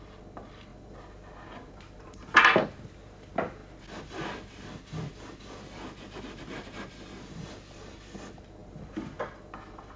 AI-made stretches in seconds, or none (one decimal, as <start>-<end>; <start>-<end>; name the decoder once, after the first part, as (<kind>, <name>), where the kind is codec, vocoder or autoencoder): none